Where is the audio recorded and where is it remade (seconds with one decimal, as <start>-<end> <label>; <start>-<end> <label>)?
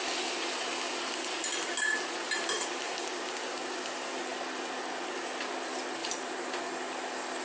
0.0-6.0 recorded; 6.0-6.5 remade; 6.5-7.4 recorded